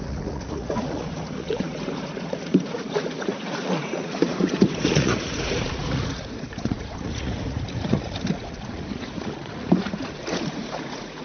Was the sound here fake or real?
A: fake